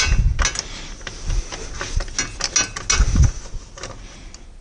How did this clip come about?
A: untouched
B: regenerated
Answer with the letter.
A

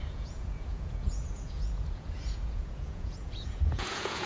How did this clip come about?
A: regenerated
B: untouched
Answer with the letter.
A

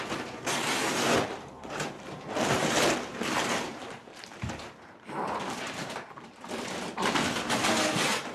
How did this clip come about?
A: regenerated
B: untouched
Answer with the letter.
A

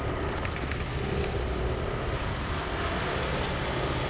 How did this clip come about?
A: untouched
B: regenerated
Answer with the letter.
A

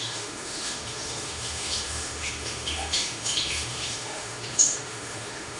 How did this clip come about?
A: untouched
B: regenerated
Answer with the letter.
B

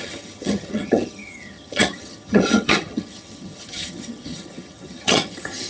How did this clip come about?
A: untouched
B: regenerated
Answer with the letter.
B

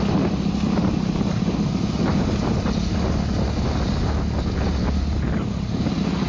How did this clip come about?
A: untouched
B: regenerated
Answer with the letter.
A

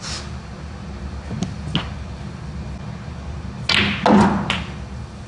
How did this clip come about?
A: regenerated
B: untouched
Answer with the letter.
B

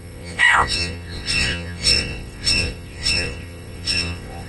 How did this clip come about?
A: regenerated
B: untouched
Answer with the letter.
A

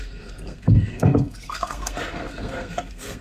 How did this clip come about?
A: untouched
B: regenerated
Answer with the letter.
B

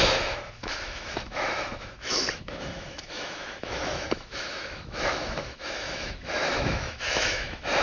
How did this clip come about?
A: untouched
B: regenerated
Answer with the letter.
B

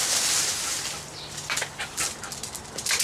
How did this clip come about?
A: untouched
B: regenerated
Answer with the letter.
A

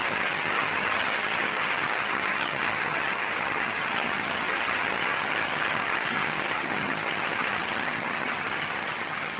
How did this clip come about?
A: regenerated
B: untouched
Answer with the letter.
A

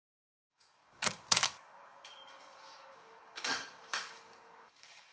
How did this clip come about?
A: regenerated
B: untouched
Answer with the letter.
A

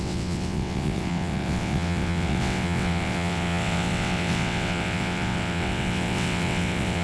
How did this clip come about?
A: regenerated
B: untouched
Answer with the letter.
A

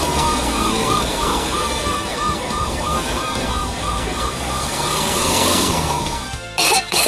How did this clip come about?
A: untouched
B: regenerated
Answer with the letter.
B